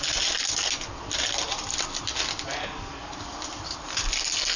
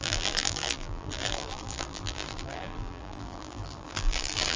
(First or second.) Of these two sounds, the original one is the first